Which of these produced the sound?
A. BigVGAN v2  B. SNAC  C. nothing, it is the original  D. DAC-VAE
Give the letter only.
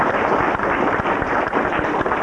A